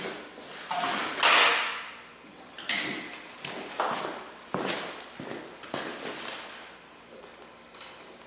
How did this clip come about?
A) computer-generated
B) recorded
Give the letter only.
B